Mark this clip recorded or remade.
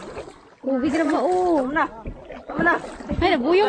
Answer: recorded